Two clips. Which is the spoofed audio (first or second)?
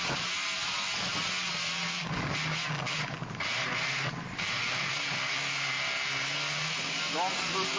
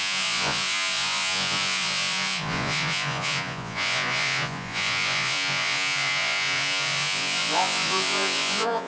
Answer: second